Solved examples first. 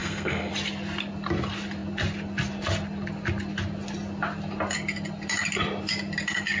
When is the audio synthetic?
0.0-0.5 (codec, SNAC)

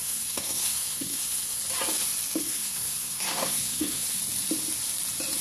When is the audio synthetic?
0.0-1.6 (codec, SNAC); 2.4-4.2

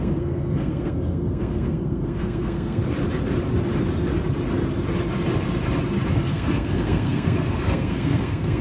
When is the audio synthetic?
0.0-2.8 (codec, SNAC); 6.1-8.6

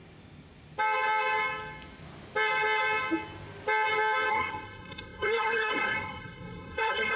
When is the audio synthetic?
4.3-7.2 (codec, SNAC)

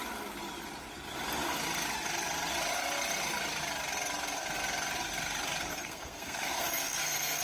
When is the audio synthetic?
5.7-7.4 (codec, SNAC)

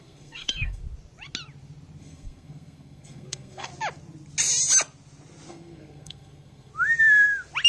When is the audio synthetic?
0.0-0.8 (codec, SNAC); 2.0-3.7; 5.5-6.7

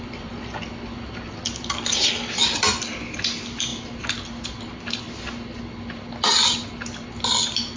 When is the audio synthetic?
none

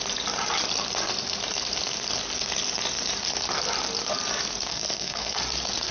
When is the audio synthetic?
4.7-5.4 (codec, SNAC)